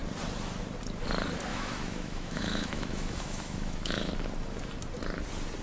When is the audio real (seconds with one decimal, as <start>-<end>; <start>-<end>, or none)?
0.0-1.5; 4.1-5.6